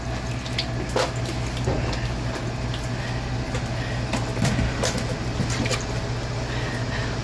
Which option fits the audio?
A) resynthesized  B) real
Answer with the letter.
B